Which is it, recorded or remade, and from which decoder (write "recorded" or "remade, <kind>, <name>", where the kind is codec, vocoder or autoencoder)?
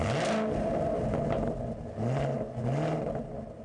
recorded